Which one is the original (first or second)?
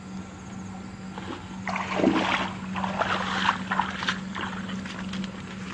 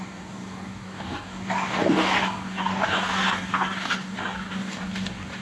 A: first